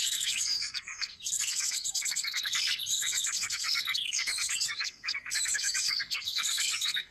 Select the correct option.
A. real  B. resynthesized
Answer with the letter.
B